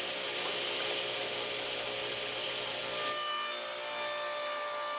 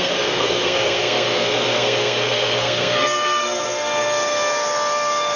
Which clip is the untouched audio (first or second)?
first